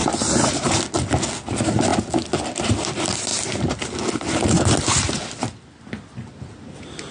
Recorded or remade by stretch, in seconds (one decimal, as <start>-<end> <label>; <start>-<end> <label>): 0.0-0.7 remade; 0.7-7.1 recorded